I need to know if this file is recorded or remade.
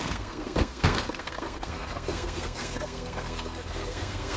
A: remade